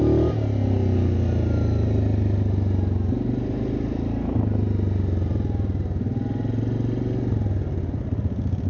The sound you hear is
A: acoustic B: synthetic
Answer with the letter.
A